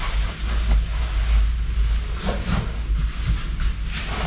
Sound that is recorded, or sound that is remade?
recorded